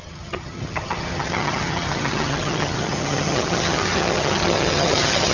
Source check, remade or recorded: remade